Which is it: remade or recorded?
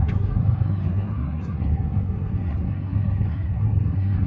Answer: remade